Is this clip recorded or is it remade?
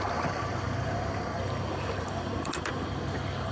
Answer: remade